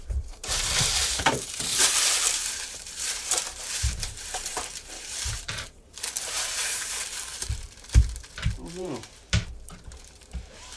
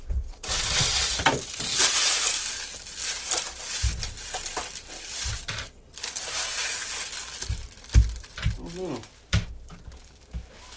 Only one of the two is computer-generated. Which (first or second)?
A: first